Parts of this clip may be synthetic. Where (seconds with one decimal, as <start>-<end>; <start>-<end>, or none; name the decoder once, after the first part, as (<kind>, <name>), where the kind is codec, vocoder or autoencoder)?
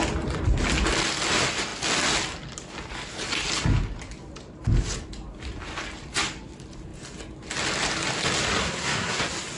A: 8.6-9.2 (codec, SNAC)